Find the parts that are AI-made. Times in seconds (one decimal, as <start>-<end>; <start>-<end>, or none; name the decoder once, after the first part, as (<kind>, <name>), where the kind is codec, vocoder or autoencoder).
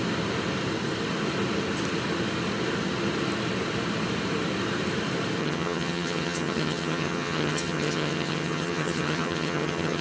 5.4-10.0 (vocoder, HiFi-GAN)